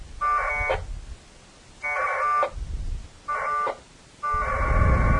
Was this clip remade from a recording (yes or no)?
no